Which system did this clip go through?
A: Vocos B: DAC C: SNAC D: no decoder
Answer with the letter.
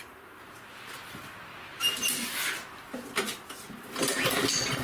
D